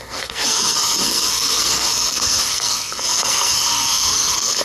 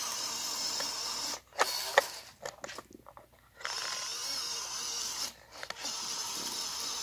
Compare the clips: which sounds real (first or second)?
second